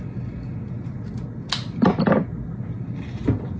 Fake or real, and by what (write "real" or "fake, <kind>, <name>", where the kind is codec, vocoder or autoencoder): real